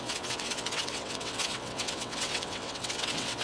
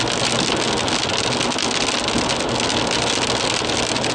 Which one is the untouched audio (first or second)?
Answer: second